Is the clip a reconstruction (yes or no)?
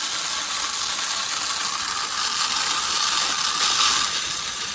no